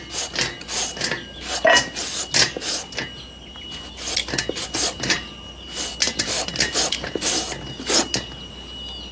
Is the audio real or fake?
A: real